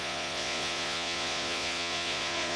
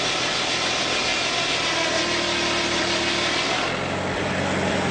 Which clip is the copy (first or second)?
first